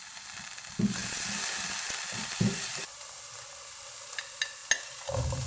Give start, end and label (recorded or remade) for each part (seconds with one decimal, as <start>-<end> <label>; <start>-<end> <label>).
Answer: 0.0-5.5 recorded